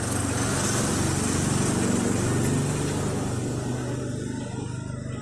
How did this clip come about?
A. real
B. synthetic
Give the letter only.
A